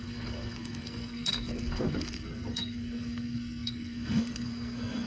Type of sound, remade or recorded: remade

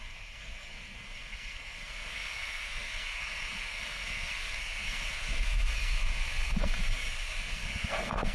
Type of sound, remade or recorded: remade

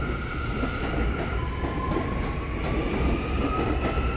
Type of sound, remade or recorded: recorded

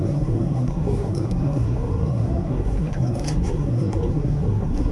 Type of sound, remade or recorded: remade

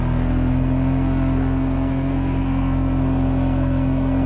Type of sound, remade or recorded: remade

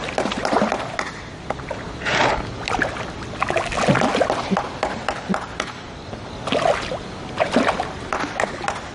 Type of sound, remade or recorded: recorded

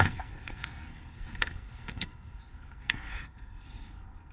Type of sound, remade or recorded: remade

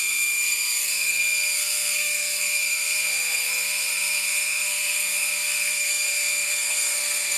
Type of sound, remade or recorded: remade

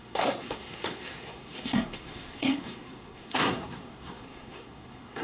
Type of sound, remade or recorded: remade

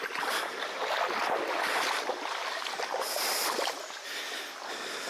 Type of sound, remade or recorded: recorded